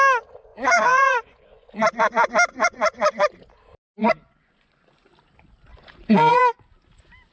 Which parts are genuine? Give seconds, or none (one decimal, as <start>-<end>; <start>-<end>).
0.0-0.5; 1.7-2.5; 3.1-4.0; 5.1-5.7; 6.4-7.3